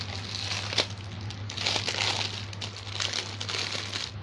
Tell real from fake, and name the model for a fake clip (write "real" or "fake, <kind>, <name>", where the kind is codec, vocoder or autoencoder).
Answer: real